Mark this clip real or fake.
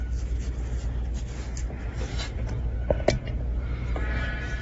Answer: real